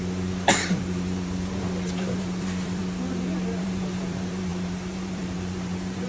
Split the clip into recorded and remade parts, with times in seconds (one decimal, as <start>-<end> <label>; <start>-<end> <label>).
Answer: 0.0-2.8 remade; 2.8-3.6 recorded; 3.6-6.1 remade